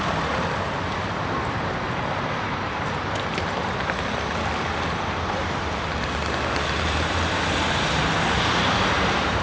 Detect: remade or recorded recorded